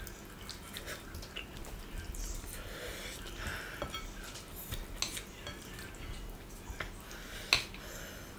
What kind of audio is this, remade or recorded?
recorded